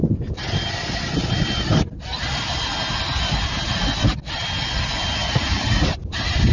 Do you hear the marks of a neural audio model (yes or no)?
no